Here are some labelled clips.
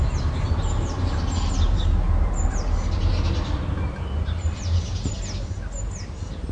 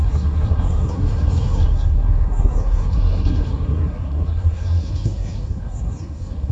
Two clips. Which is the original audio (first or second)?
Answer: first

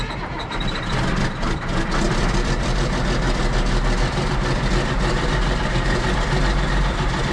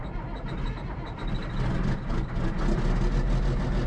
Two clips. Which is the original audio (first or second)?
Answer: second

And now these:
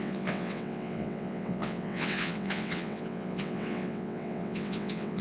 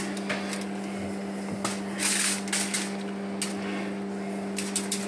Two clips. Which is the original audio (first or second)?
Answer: second